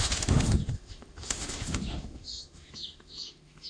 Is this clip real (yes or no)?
no